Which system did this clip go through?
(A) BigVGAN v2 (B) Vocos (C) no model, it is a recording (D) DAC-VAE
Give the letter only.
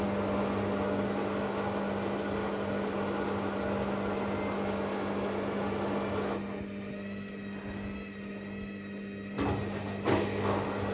C